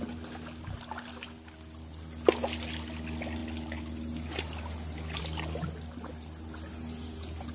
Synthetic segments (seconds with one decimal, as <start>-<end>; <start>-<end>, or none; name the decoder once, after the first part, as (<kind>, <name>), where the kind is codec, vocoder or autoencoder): none